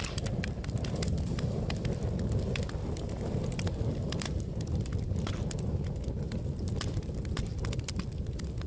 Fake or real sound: fake